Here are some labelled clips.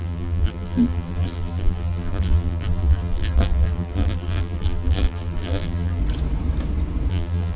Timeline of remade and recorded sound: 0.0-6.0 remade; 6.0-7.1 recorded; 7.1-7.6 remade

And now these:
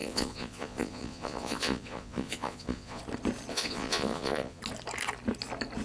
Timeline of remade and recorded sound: 0.0-3.0 remade; 3.0-3.5 recorded; 3.5-4.6 remade; 4.6-5.8 recorded

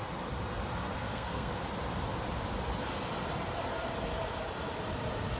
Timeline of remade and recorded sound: 0.0-0.9 recorded; 0.9-1.5 remade; 1.5-5.4 recorded

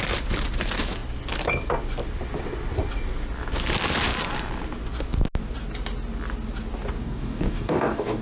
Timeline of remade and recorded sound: 0.0-7.0 recorded; 7.0-8.2 remade

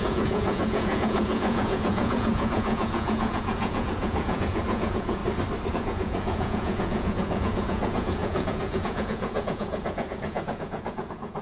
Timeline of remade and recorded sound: 0.0-5.2 remade; 5.2-5.7 recorded; 5.7-11.4 remade

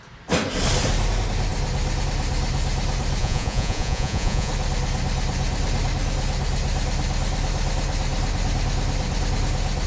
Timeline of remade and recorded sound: 0.0-3.2 recorded; 3.2-4.5 remade; 4.5-9.9 recorded

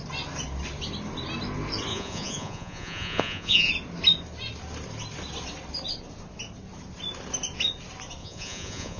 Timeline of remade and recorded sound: 0.0-1.9 recorded; 1.9-3.7 remade; 3.7-8.2 recorded; 8.2-9.0 remade